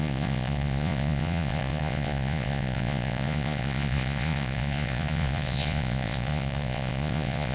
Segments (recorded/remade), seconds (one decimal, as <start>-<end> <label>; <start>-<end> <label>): 0.0-7.5 remade